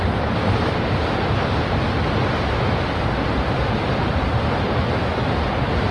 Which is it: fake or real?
real